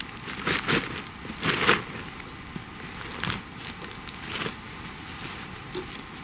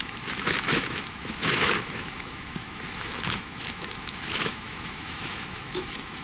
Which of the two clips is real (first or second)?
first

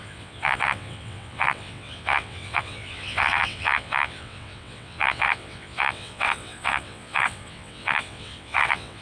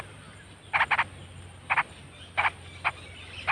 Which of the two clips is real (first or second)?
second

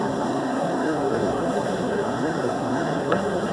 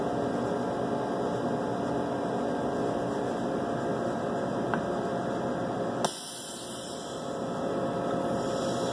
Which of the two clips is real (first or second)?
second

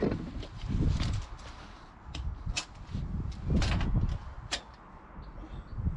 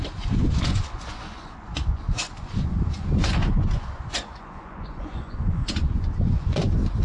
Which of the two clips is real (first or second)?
first